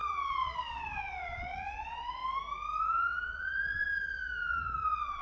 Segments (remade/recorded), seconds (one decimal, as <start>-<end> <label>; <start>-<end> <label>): 0.0-2.2 remade; 2.2-2.8 recorded; 2.8-5.2 remade